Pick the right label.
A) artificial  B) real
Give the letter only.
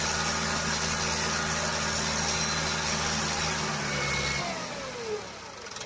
B